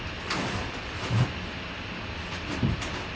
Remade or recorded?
recorded